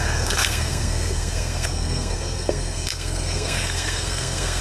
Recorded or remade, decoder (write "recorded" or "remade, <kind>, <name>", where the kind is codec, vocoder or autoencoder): remade, codec, SNAC